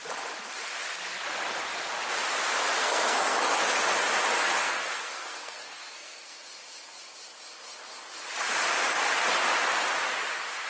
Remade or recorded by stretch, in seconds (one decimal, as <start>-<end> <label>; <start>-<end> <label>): 0.0-2.8 recorded; 2.8-3.6 remade; 3.6-4.6 recorded; 4.6-6.4 remade; 6.4-10.7 recorded